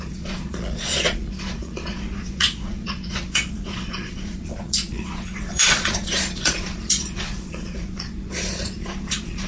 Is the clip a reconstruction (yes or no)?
yes